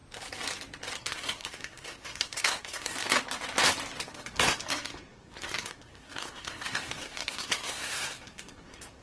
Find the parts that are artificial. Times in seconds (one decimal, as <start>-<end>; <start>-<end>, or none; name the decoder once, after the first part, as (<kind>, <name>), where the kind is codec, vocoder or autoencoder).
1.0-2.9 (codec, SNAC); 4.0-9.0